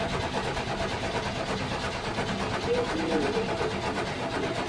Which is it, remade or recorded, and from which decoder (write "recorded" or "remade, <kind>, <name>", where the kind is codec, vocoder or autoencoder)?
recorded